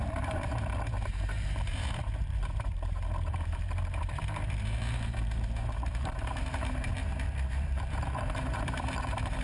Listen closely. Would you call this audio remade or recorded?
remade